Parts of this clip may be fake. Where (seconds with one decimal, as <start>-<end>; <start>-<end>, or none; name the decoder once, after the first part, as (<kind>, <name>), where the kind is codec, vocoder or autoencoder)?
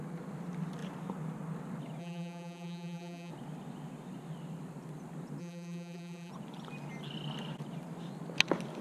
2.0-3.3 (vocoder, BigVGAN v2); 5.4-6.3